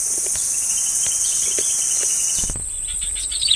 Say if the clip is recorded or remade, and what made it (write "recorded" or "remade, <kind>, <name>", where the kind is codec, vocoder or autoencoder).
recorded